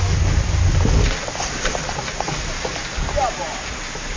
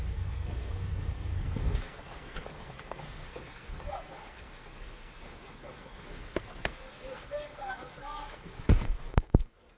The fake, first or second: second